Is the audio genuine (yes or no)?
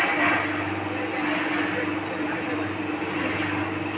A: yes